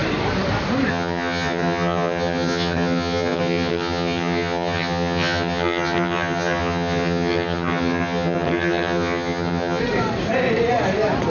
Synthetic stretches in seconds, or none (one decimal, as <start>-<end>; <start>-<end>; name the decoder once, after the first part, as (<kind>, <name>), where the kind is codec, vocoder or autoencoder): 0.9-9.8 (vocoder, HiFi-GAN)